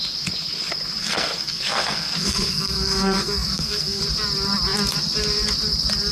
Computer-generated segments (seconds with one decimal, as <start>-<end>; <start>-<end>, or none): 1.0-4.0